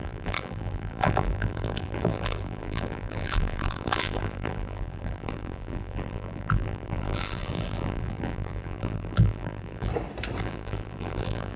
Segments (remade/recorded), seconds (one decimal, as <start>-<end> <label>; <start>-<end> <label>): 0.0-9.9 remade; 9.9-10.4 recorded; 10.4-11.6 remade